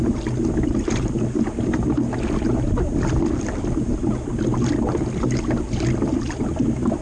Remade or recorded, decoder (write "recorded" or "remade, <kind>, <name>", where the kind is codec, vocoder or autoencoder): recorded